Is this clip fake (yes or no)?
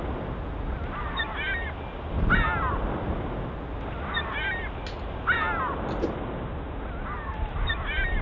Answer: no